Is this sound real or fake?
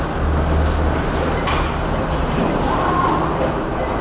real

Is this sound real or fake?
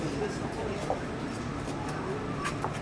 fake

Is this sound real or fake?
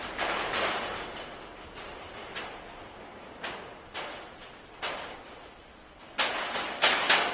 real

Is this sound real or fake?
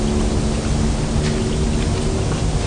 real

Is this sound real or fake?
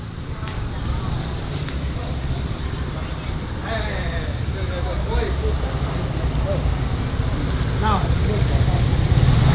real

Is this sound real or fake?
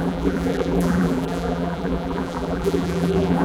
fake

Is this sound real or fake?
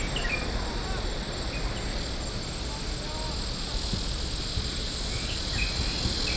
real